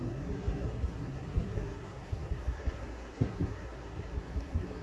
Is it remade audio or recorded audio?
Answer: remade